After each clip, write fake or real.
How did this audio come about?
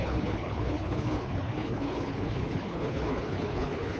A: fake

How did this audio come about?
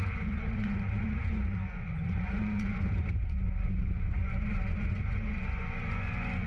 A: fake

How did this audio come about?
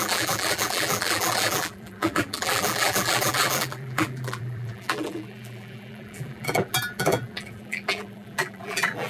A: fake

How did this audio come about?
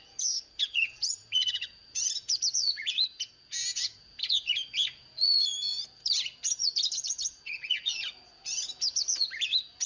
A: fake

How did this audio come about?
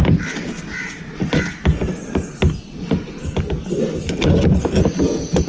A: real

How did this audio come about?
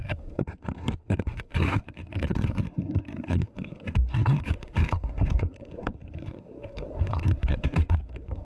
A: fake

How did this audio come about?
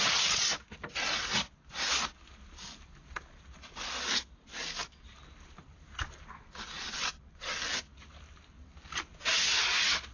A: real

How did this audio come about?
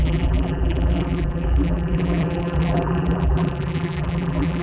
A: fake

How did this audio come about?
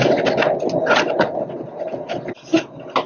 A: real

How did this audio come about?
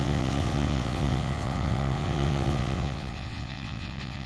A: fake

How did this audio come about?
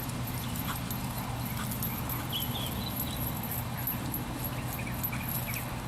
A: real